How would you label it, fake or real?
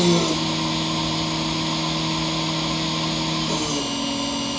real